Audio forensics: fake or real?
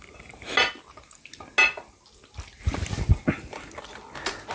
real